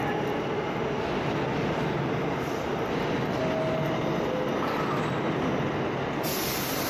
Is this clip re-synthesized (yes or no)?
no